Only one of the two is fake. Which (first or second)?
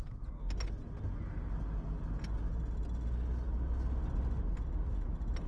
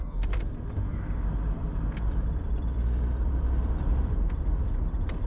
second